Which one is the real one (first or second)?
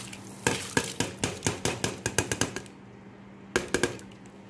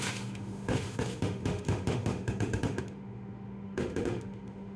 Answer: first